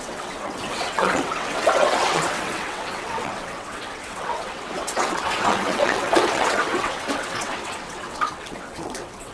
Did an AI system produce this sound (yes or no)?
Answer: yes